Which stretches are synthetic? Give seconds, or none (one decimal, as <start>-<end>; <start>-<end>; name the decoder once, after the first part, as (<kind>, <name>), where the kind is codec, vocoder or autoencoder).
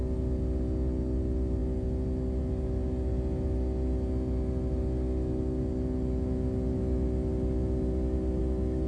none